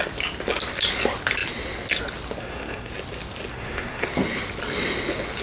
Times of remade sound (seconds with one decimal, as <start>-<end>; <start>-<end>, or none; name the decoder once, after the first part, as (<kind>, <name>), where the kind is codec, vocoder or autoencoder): 2.4-2.9 (codec, SNAC); 3.5-4.1